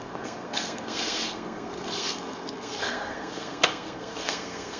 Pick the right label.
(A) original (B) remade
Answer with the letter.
B